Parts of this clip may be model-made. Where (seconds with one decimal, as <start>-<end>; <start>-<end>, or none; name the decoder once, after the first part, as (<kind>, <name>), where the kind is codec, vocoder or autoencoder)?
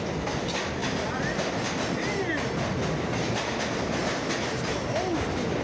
none